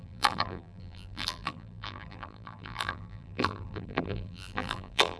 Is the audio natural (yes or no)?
no